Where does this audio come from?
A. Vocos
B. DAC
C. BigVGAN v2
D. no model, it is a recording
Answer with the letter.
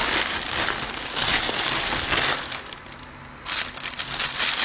D